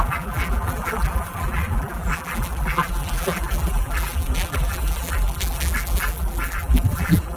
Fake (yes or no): yes